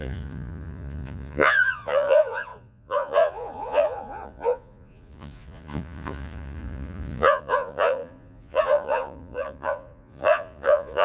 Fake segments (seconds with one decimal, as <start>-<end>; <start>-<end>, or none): 0.0-11.0